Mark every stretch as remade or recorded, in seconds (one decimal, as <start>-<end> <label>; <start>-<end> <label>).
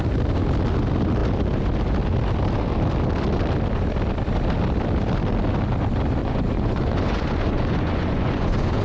0.0-6.2 recorded; 6.2-8.8 remade